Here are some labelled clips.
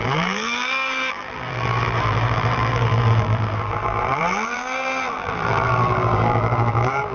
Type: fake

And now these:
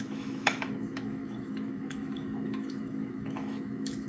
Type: fake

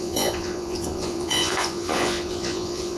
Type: fake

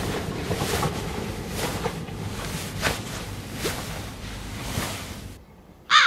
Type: fake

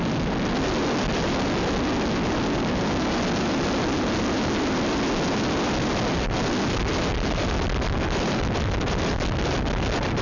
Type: real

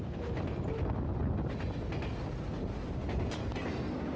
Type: real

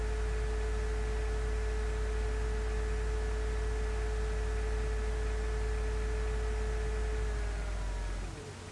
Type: real